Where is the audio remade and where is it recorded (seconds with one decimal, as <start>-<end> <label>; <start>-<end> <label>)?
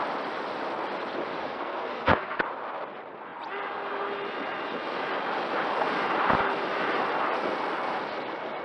0.0-1.4 recorded; 1.4-2.4 remade; 2.4-8.6 recorded